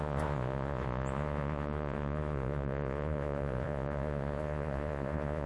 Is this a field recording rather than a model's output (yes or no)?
no